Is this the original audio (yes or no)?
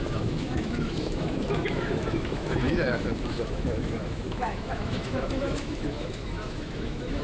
no